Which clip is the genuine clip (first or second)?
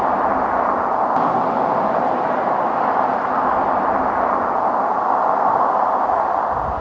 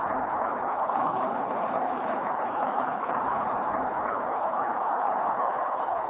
first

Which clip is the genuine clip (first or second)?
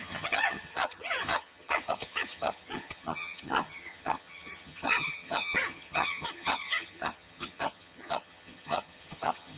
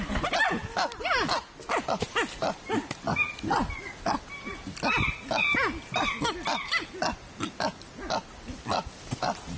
second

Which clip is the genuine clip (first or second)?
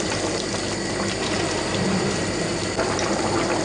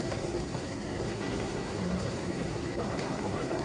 first